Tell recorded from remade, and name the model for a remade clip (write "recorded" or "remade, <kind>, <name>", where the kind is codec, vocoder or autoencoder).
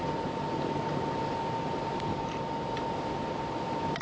recorded